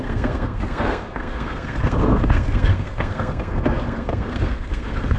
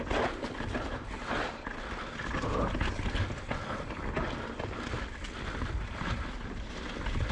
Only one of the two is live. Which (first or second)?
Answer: second